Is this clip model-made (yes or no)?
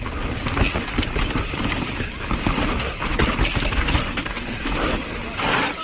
no